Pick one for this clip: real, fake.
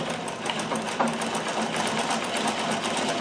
real